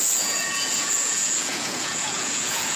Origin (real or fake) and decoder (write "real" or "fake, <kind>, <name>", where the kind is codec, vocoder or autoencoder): fake, vocoder, Vocos